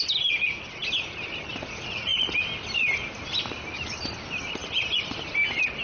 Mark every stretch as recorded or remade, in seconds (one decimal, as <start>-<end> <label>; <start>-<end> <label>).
0.0-5.8 recorded